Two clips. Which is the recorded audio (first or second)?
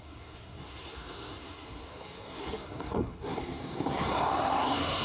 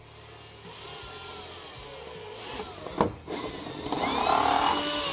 second